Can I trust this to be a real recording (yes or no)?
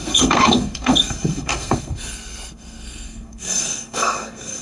no